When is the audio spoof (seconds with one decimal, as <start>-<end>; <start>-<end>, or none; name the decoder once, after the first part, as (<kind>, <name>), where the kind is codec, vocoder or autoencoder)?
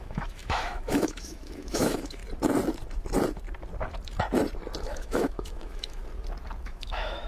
0.0-2.2 (autoencoder, DAC-VAE); 4.8-6.0; 6.6-7.3